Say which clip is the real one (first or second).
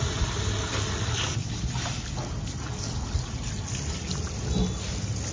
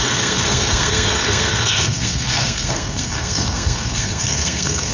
first